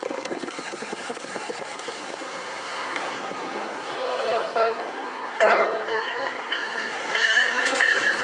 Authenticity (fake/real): fake